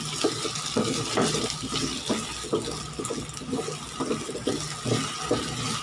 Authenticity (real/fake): real